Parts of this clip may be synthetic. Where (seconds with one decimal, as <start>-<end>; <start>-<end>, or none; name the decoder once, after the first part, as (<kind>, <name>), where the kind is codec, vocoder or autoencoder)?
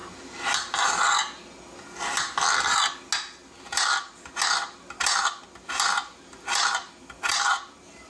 6.1-8.1 (vocoder, BigVGAN v2)